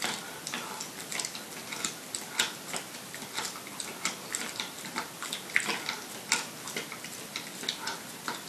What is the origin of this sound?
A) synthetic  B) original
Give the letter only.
B